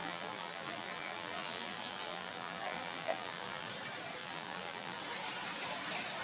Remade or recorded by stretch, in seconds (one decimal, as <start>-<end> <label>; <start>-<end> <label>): 0.0-3.7 remade; 3.7-4.2 recorded; 4.2-5.0 remade; 5.0-6.2 recorded